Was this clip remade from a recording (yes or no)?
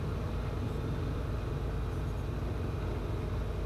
no